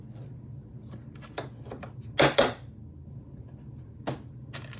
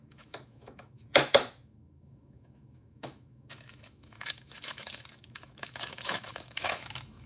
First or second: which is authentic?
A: first